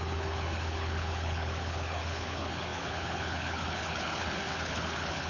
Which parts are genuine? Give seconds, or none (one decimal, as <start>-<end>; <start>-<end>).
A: none